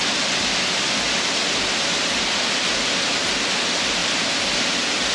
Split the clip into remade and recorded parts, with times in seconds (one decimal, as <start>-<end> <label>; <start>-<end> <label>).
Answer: 0.0-4.0 recorded; 4.0-5.1 remade